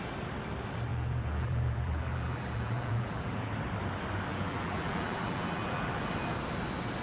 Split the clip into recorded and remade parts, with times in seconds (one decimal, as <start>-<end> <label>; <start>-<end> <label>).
0.0-0.9 recorded; 0.9-3.5 remade; 3.5-4.3 recorded; 4.3-5.9 remade; 5.9-7.0 recorded